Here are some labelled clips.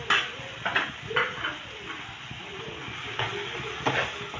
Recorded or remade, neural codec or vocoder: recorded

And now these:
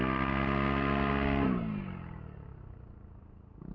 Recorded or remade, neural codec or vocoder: recorded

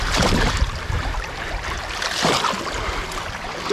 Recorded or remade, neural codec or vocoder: recorded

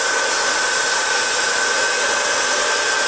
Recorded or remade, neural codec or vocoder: recorded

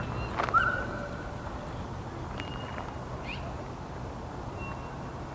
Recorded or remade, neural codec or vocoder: recorded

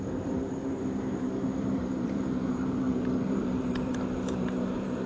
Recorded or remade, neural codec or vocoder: remade, vocoder, BigVGAN v2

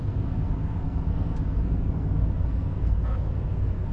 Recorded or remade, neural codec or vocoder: remade, codec, SNAC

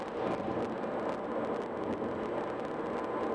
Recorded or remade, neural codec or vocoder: recorded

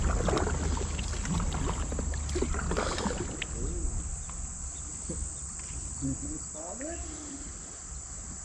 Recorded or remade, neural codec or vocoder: recorded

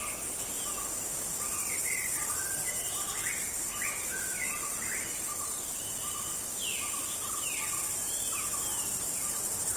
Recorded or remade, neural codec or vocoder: recorded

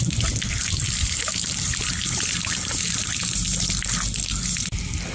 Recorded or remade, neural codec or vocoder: recorded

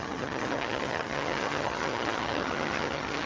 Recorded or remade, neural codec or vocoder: remade, vocoder, HiFi-GAN